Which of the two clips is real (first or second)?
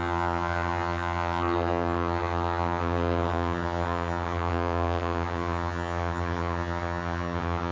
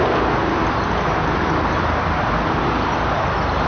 second